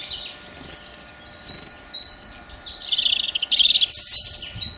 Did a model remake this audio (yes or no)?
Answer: no